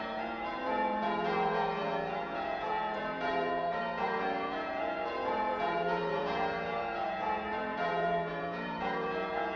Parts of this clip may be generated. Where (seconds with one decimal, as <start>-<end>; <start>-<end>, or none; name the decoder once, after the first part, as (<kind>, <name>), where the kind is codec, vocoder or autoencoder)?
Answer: 0.0-9.6 (vocoder, Vocos)